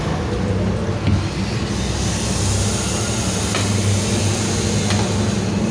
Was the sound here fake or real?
real